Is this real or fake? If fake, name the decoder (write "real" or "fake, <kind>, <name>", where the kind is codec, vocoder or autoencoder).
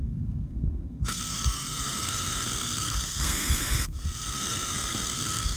fake, codec, SNAC